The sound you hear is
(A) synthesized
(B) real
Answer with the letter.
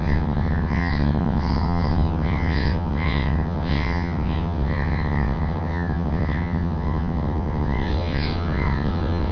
A